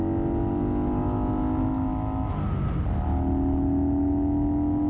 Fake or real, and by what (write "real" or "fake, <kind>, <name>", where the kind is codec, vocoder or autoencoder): real